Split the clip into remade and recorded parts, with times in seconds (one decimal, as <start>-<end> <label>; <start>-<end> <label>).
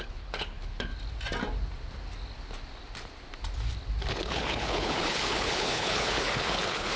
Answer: 0.0-0.9 remade; 0.9-4.1 recorded; 4.1-7.0 remade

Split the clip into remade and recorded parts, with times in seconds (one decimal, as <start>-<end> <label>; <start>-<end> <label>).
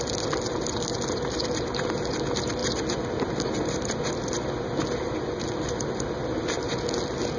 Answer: 0.0-7.4 recorded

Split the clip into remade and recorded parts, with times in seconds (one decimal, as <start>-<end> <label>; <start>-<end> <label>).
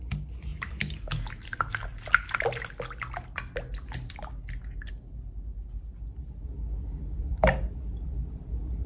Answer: 0.0-8.9 recorded